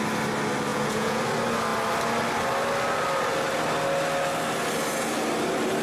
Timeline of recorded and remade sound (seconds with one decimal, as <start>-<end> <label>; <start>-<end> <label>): 0.0-0.7 recorded; 0.7-1.2 remade; 1.2-5.8 recorded